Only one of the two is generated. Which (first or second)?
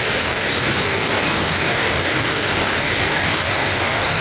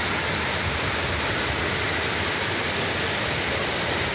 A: first